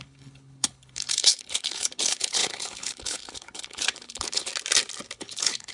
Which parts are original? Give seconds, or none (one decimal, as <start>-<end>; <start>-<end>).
4.5-5.1